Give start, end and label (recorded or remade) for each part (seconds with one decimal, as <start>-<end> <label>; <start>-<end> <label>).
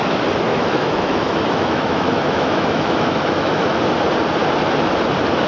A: 0.0-0.5 recorded; 0.5-3.8 remade; 3.8-5.5 recorded